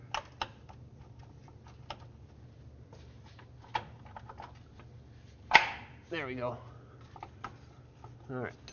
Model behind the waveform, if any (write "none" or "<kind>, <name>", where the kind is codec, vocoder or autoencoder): none